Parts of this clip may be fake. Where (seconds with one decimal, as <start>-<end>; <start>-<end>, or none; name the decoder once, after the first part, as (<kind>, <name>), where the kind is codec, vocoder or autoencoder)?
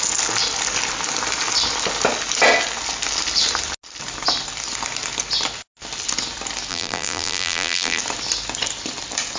6.7-8.0 (vocoder, BigVGAN v2)